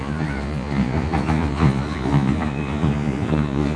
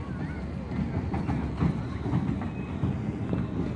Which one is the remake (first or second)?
first